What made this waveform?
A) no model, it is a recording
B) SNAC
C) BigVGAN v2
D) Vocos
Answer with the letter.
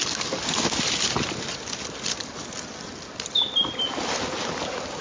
A